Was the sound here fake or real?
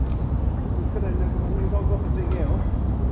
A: real